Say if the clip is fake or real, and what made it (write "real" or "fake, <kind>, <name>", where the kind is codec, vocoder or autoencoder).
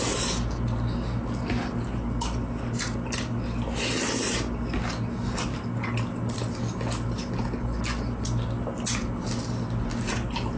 real